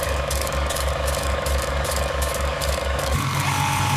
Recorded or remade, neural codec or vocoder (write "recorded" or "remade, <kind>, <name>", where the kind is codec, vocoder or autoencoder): remade, codec, DAC